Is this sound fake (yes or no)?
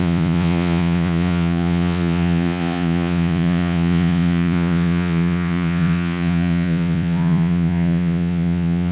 yes